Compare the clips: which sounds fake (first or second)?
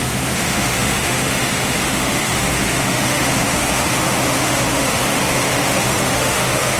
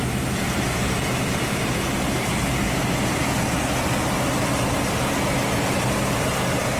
first